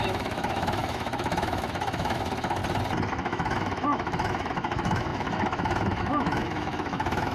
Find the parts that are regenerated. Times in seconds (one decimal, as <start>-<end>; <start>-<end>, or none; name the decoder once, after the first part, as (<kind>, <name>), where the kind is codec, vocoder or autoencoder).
0.0-2.6 (autoencoder, DAC-VAE); 3.1-7.3